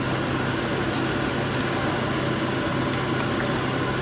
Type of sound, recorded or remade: recorded